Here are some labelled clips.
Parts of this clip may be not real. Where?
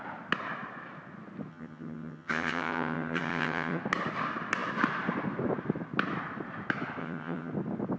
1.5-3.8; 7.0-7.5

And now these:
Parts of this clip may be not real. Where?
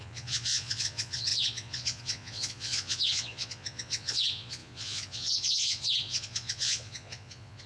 0.0-7.7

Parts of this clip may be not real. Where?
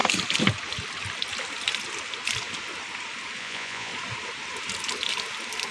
3.4-3.9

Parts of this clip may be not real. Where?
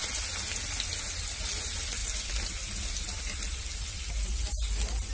none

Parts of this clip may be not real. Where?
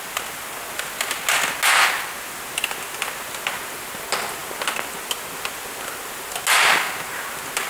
none